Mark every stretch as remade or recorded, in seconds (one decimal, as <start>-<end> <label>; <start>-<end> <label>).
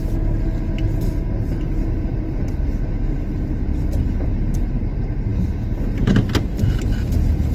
0.0-7.5 recorded